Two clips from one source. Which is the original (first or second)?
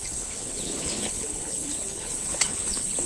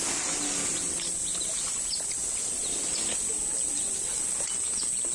second